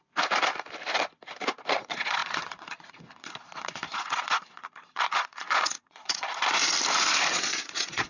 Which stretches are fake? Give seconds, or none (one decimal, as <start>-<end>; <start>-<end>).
1.7-6.3; 7.3-8.1